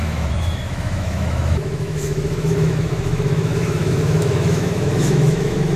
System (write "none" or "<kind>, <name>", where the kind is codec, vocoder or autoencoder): autoencoder, DAC-VAE